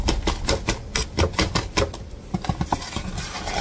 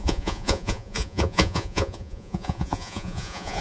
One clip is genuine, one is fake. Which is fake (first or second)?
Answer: second